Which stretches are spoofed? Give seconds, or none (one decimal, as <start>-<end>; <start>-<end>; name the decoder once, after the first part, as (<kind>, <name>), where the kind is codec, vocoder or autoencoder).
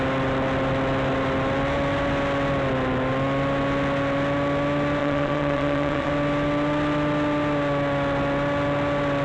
5.0-6.1 (vocoder, Vocos)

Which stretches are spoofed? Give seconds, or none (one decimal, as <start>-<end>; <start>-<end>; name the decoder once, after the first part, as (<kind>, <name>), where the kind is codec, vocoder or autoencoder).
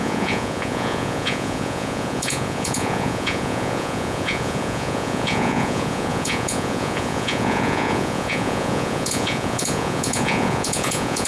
0.0-11.3 (vocoder, Vocos)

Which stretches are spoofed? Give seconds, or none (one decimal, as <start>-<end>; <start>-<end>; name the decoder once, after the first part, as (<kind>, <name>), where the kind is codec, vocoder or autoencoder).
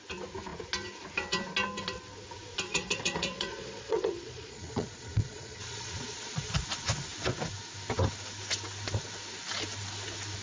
2.7-6.5 (vocoder, Vocos)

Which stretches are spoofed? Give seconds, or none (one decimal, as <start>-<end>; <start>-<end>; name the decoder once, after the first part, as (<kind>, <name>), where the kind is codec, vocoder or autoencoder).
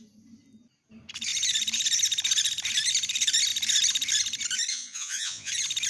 4.7-5.5 (vocoder, Vocos)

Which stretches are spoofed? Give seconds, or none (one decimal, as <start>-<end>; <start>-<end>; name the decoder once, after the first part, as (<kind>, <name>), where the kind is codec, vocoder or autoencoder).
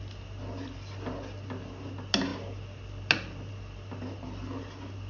none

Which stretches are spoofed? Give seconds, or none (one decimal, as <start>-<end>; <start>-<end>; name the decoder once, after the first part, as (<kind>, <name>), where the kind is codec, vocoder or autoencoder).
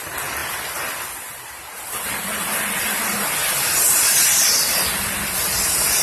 none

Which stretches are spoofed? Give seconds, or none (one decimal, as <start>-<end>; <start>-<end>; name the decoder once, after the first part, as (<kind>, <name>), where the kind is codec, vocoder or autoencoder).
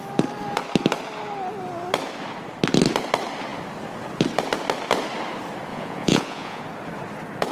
5.7-6.6 (vocoder, Vocos)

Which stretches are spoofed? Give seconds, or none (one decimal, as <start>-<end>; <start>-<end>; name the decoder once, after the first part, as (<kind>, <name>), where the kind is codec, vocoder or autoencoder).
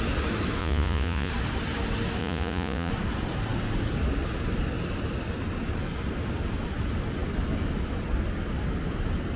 0.6-1.3 (vocoder, Vocos); 2.2-2.9